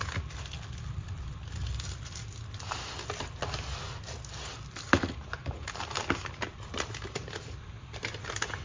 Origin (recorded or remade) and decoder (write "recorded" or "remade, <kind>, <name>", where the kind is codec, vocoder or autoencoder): recorded